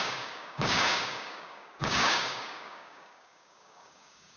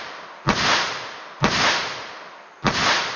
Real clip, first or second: second